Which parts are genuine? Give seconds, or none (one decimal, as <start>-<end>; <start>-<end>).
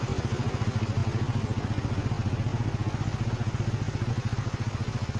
0.0-5.2